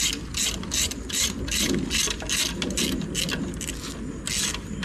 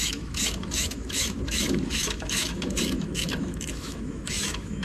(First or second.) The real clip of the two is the first